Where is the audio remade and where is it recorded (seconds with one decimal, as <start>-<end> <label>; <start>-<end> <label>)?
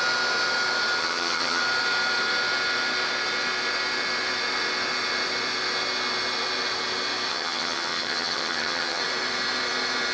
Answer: 0.0-1.0 recorded; 1.0-1.6 remade; 1.6-7.3 recorded; 7.3-9.0 remade; 9.0-10.1 recorded